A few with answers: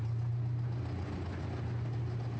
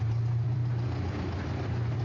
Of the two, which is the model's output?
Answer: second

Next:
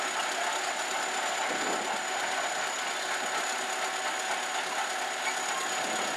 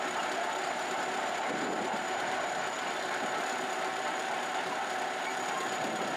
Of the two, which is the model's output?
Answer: second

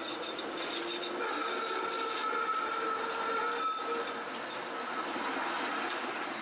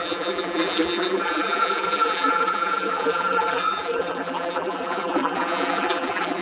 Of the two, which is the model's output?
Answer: second